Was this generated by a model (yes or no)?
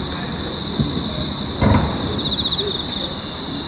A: no